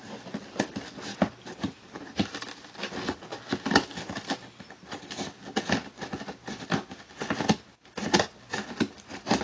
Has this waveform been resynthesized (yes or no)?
no